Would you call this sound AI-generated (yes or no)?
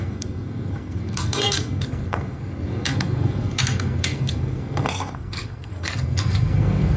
yes